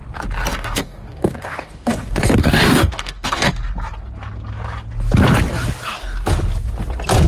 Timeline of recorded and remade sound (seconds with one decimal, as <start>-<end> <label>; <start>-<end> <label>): 0.0-0.5 recorded; 0.5-3.5 remade; 3.5-7.3 recorded